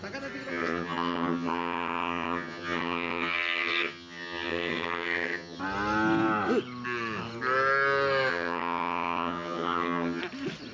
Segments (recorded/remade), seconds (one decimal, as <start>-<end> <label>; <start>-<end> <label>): 0.0-0.5 recorded; 0.5-5.6 remade; 5.6-8.3 recorded; 8.3-10.2 remade; 10.2-10.7 recorded